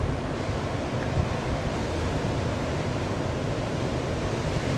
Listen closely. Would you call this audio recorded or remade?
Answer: recorded